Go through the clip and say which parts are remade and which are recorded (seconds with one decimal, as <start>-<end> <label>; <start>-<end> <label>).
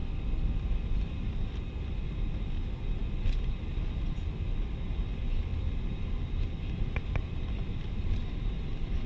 0.0-9.1 recorded